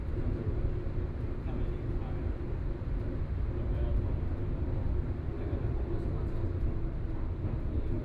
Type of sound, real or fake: real